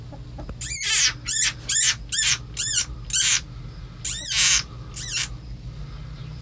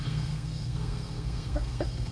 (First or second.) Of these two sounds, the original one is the first